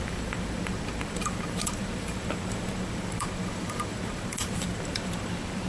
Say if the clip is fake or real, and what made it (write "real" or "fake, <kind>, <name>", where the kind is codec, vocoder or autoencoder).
fake, vocoder, BigVGAN v2